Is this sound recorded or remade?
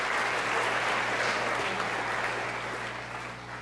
recorded